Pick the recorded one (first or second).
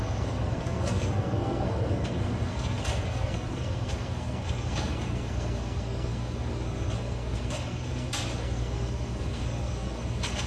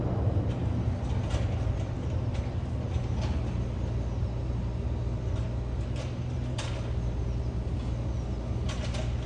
second